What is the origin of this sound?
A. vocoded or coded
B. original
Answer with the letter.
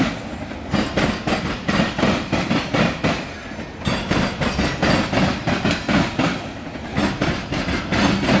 B